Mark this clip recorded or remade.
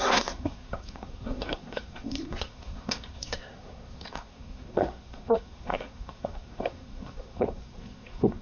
remade